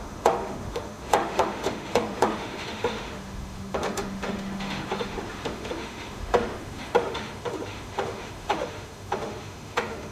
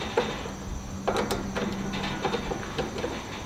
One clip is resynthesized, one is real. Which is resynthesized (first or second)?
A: first